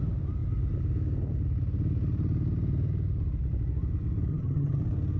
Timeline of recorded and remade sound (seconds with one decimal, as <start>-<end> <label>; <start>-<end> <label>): 0.0-4.3 recorded; 4.3-4.8 remade; 4.8-5.2 recorded